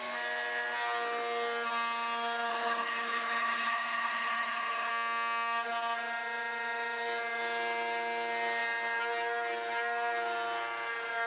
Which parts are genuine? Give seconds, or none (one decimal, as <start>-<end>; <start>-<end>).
0.0-2.5; 4.9-11.3